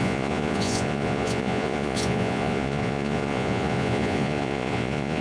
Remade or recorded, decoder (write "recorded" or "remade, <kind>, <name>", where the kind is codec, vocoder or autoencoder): remade, vocoder, Vocos